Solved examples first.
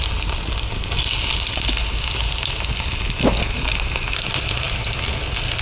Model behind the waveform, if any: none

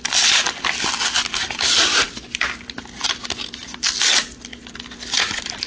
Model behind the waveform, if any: none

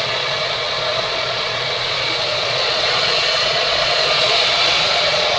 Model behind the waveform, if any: vocoder, Vocos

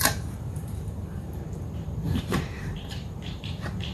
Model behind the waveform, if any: vocoder, BigVGAN v2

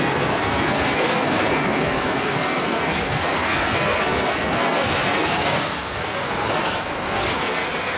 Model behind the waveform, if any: codec, SNAC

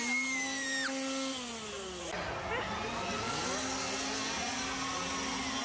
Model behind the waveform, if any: none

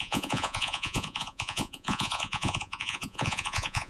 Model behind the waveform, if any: vocoder, Vocos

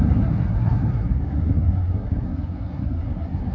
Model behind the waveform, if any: codec, SNAC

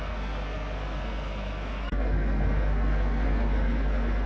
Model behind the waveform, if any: codec, SNAC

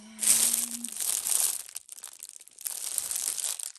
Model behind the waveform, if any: none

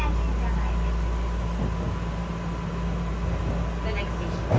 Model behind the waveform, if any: none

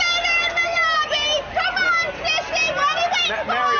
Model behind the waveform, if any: none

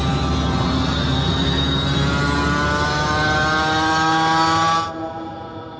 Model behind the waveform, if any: none